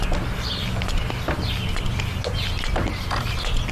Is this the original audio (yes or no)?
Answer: yes